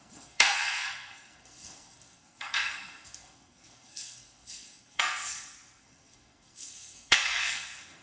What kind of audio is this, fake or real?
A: fake